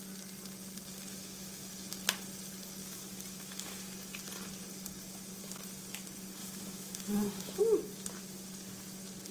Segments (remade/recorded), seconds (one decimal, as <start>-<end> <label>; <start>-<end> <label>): 0.0-1.1 recorded; 1.1-1.7 remade; 1.7-2.8 recorded; 2.8-3.9 remade; 3.9-6.4 recorded; 6.4-7.6 remade; 7.6-9.3 recorded